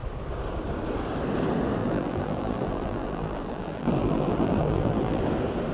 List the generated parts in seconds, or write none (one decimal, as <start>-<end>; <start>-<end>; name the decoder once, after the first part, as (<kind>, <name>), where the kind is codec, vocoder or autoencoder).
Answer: 1.8-5.2 (vocoder, BigVGAN v2)